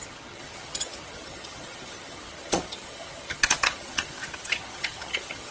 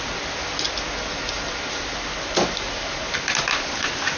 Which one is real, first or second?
second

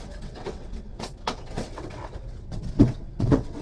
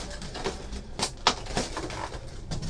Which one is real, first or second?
second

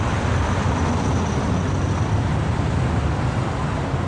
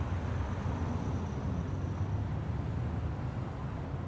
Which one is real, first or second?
second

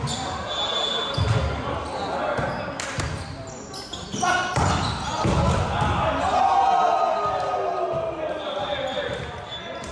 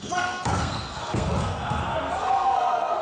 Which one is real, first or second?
first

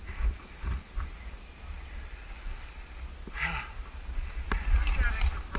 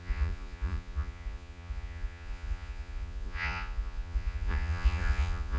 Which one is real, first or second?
first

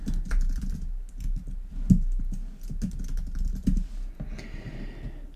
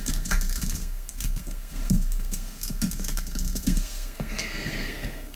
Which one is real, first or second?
first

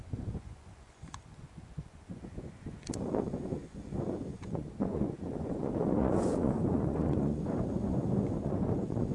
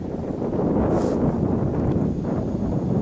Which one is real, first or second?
second